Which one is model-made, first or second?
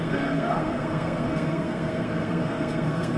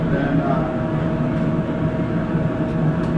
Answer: first